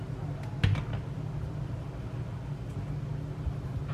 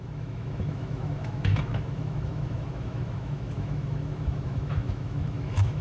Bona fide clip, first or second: first